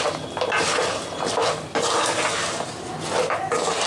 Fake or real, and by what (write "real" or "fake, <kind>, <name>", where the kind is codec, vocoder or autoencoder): real